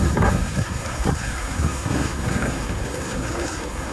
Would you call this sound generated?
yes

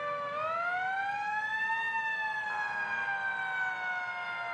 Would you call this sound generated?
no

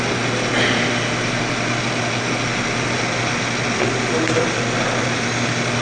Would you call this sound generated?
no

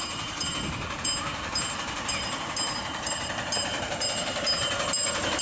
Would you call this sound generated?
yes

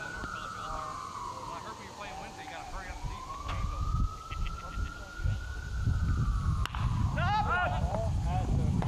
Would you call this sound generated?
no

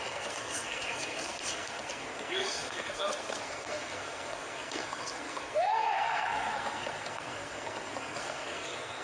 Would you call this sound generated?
yes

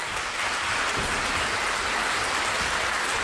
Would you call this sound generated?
no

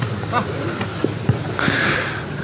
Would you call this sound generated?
no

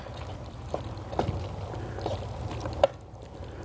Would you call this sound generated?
no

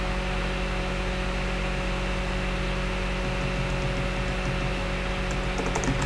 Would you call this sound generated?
no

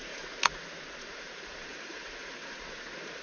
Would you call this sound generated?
yes